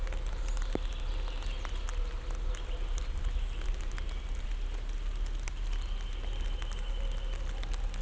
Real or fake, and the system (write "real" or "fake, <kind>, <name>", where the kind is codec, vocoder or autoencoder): real